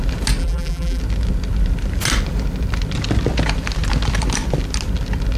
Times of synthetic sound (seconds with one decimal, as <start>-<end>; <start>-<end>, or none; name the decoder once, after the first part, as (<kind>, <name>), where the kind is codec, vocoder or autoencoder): 0.4-1.0 (vocoder, BigVGAN v2)